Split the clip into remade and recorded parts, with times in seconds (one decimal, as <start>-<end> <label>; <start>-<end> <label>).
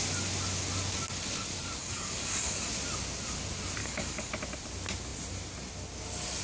0.0-1.8 recorded; 1.8-2.7 remade; 2.7-3.8 recorded; 3.8-4.3 remade; 4.3-6.4 recorded